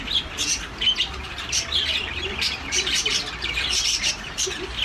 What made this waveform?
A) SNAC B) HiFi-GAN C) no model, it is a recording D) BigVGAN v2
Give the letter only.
D